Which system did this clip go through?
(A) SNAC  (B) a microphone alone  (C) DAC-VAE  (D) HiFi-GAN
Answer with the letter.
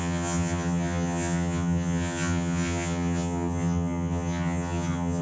D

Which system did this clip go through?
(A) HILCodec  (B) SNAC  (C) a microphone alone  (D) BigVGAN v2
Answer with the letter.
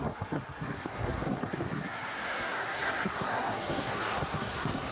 B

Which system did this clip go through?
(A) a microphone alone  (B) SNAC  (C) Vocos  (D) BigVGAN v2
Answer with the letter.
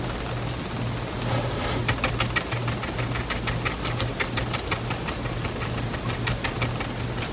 A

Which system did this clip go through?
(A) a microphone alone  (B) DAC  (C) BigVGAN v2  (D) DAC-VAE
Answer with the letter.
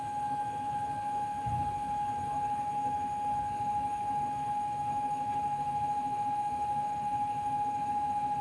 D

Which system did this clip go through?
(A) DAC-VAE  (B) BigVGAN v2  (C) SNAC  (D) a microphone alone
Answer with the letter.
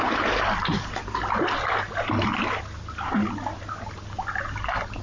D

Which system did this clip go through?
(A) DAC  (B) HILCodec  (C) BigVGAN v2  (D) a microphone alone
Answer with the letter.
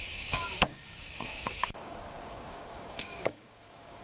A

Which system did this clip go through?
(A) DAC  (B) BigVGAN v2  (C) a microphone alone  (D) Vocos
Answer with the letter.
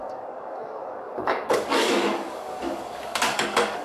A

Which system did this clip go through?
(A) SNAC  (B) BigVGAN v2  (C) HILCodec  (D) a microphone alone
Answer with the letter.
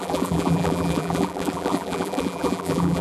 B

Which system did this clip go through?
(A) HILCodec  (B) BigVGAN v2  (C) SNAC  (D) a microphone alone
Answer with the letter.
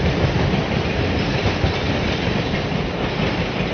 B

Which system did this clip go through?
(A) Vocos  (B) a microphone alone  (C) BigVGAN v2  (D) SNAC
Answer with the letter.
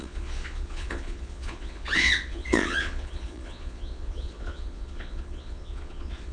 A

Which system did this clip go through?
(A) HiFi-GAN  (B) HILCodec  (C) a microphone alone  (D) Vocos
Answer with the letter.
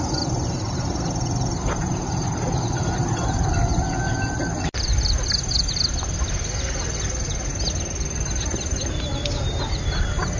C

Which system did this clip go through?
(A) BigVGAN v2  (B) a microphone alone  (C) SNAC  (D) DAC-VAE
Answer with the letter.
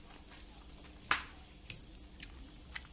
B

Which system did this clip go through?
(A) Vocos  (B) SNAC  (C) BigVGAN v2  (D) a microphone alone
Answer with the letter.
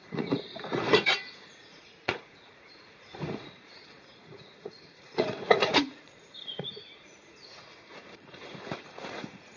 A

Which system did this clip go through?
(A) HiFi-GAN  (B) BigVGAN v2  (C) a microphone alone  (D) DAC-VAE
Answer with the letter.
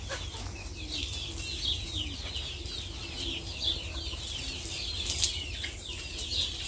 C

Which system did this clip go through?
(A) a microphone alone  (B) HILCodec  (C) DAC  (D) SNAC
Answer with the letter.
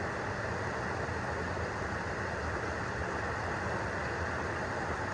A